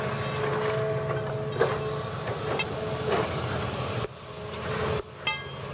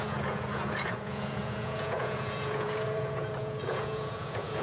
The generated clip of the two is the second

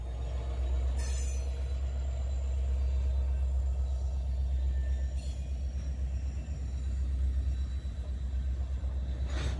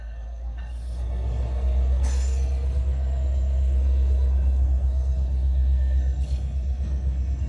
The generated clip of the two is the second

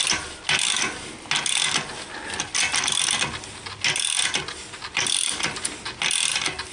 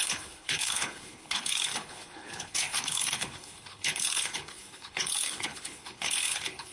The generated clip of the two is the second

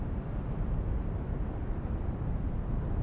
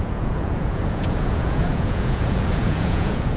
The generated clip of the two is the second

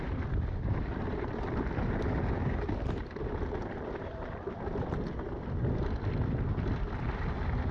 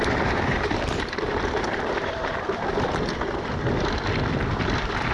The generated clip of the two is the second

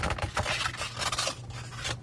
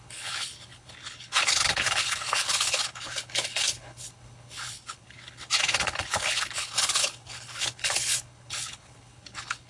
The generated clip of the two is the second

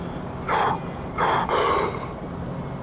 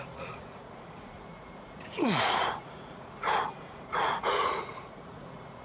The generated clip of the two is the second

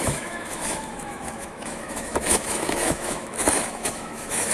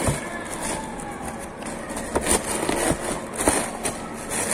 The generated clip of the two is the first